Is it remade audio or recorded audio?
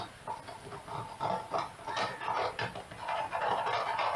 recorded